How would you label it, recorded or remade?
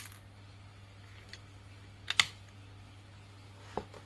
recorded